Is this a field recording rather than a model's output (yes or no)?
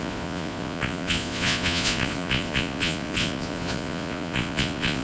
no